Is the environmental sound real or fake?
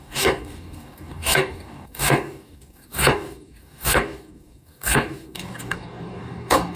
fake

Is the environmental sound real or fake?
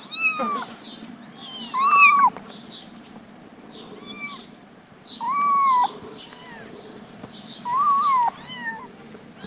real